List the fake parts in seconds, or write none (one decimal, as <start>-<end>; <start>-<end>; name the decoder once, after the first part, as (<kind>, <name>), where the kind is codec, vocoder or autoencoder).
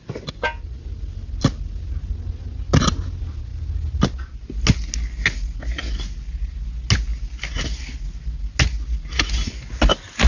none